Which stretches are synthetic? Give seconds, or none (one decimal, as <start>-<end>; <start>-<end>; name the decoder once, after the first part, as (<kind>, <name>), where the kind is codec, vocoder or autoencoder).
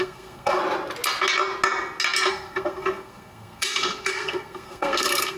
0.0-0.6 (codec, SNAC); 2.3-5.4